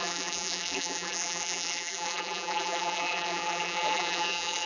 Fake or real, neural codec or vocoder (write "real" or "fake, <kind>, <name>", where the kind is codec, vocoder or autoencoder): fake, vocoder, BigVGAN v2